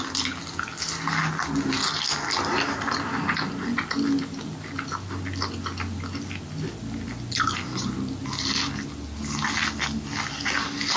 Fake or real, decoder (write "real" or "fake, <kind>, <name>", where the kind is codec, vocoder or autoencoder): real